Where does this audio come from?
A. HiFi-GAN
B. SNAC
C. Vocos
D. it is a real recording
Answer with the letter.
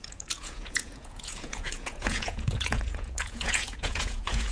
C